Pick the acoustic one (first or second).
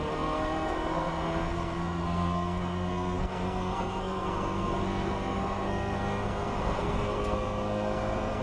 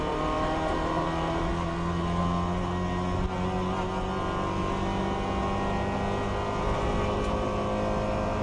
second